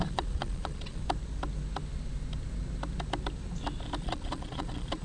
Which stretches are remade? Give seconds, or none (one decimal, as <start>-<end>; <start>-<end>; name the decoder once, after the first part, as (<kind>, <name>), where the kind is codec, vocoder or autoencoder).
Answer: 0.0-1.0 (vocoder, Vocos); 4.0-5.0